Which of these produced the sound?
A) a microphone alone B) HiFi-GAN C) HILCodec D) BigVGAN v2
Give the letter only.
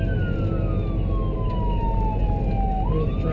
A